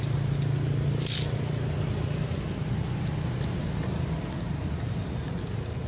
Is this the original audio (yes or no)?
yes